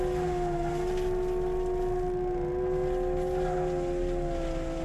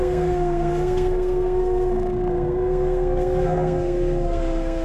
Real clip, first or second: first